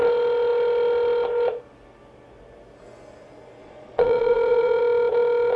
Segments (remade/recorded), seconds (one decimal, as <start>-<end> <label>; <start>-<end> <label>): 0.0-3.6 recorded; 3.6-4.8 remade; 4.8-5.6 recorded